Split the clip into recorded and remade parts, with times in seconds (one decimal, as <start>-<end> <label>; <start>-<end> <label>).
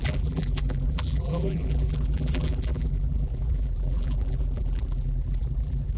0.0-6.0 remade